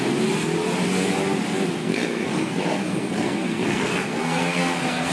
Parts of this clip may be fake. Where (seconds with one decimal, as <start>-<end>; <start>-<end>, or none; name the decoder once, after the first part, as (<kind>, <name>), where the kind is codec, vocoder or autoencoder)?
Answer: 1.8-5.1 (codec, SNAC)